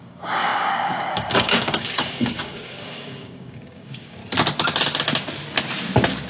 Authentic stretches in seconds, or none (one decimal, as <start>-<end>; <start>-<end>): 4.2-6.3